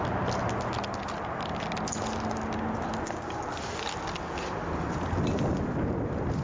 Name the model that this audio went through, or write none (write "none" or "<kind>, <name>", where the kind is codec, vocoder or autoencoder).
none